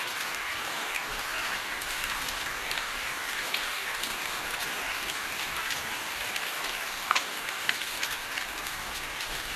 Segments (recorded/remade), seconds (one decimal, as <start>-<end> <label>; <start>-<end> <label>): 0.0-9.6 remade